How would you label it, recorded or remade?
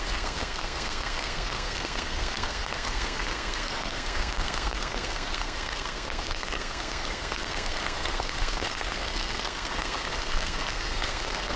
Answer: remade